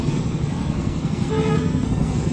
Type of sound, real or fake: fake